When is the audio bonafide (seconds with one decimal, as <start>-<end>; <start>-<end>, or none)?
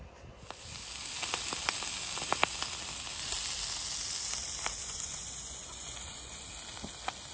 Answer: 0.0-4.8; 6.5-7.3